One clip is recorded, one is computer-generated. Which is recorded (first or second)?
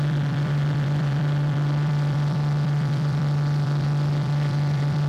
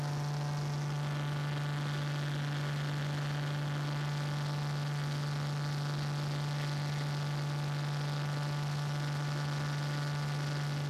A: second